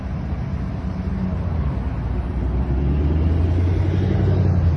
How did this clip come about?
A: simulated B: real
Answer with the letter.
B